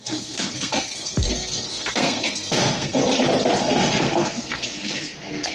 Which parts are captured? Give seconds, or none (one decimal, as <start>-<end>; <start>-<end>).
3.0-3.6